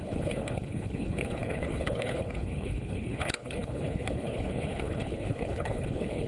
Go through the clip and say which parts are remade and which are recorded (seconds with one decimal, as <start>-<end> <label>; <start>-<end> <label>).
0.0-6.3 remade